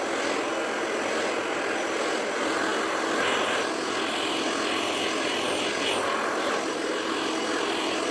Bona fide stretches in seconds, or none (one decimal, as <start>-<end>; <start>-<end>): 0.0-8.1